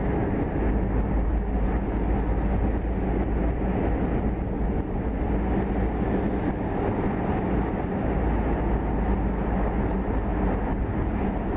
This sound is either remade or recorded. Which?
recorded